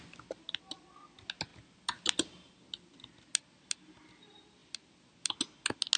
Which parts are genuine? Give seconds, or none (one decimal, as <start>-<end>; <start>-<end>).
0.0-6.0